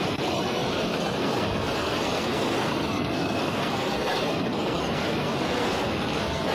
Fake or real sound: fake